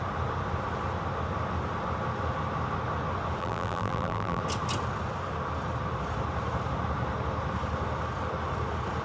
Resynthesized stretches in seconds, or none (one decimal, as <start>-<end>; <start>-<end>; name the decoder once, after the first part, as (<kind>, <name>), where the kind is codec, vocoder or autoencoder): 3.4-4.4 (vocoder, BigVGAN v2)